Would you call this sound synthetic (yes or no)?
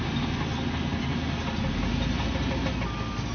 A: no